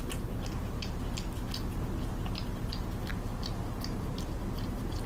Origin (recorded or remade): recorded